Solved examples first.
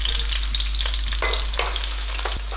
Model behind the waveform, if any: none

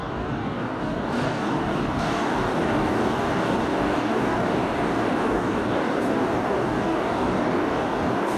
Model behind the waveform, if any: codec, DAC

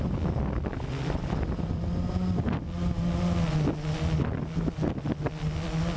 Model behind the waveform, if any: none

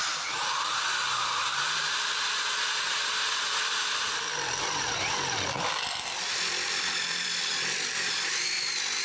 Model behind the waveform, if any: vocoder, BigVGAN v2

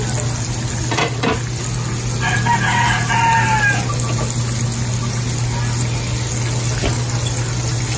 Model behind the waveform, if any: none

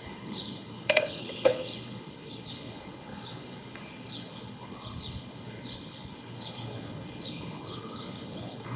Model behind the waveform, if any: codec, HILCodec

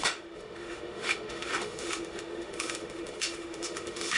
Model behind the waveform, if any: autoencoder, DAC-VAE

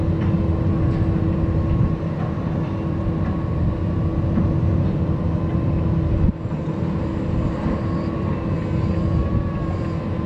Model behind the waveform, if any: none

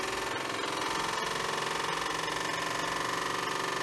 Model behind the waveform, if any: none